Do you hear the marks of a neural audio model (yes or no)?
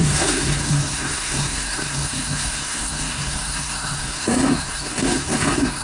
yes